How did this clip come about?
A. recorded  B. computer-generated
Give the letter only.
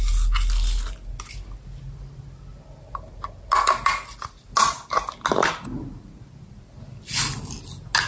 A